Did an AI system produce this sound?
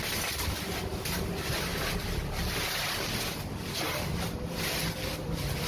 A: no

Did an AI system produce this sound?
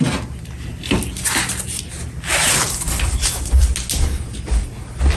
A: no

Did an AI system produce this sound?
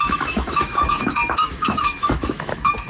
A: yes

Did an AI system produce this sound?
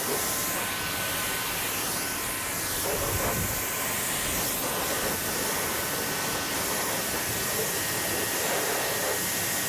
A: no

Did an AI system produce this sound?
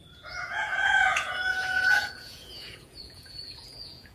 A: yes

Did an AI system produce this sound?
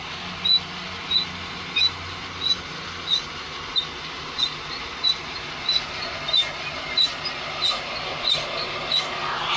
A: no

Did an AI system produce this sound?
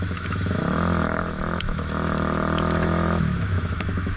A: yes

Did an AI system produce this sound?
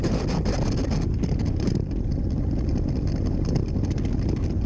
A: no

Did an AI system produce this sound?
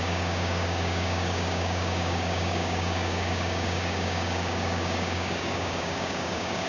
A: yes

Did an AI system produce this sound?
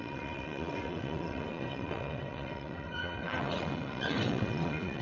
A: yes